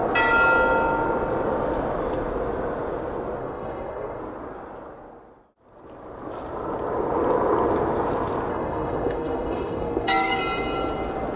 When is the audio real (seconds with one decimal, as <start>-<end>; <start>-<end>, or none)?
0.0-3.4; 4.2-8.5; 10.4-11.4